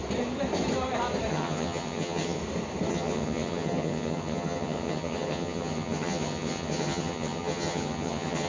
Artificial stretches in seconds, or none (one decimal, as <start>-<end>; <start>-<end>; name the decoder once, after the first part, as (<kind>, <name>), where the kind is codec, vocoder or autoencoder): 1.3-2.4 (vocoder, HiFi-GAN); 2.9-8.5